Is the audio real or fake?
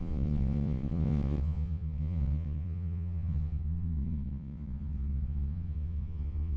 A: fake